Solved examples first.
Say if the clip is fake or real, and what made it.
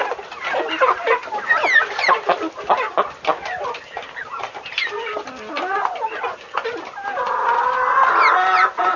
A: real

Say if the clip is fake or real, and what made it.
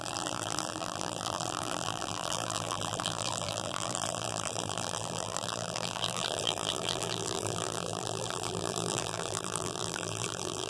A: fake, vocoder, BigVGAN v2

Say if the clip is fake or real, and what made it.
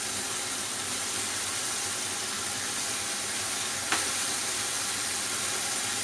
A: real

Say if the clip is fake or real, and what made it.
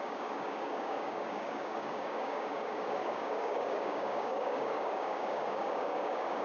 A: fake, codec, DAC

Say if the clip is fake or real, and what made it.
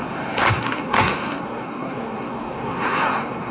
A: fake, codec, SNAC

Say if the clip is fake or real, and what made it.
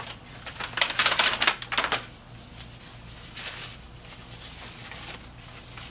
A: real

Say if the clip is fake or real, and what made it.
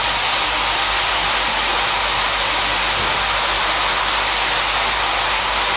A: real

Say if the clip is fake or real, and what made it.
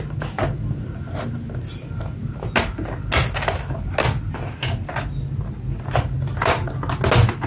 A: real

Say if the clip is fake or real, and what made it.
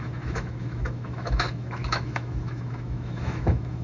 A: fake, autoencoder, DAC-VAE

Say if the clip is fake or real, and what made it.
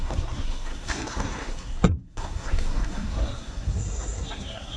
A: fake, codec, SNAC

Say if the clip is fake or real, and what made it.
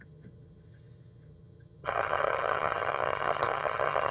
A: fake, vocoder, HiFi-GAN